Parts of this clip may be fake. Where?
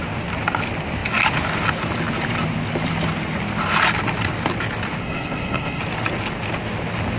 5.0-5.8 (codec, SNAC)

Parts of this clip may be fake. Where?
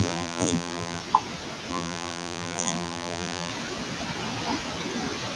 0.0-1.0 (vocoder, BigVGAN v2); 1.7-3.5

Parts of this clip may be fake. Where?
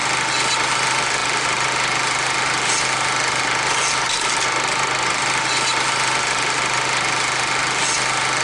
none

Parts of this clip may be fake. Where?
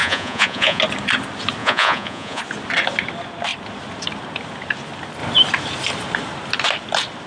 0.0-0.8 (vocoder, Vocos); 1.6-2.4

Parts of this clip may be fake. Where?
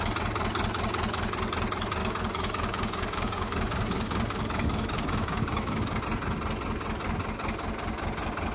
2.0-6.0 (codec, DAC)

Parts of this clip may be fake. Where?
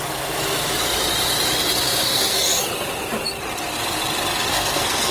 2.0-2.7 (codec, SNAC); 4.5-5.1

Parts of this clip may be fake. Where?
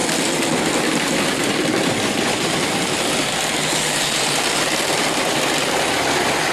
2.0-6.5 (vocoder, BigVGAN v2)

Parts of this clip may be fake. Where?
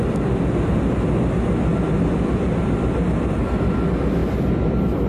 none